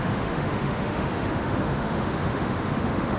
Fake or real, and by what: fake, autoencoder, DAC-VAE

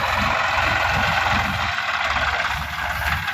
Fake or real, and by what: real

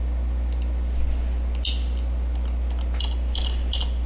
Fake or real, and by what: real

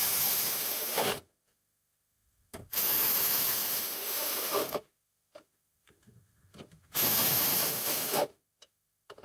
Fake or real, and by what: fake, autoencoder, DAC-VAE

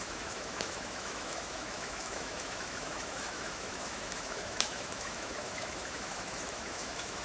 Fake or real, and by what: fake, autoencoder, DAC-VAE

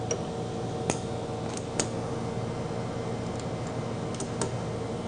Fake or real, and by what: real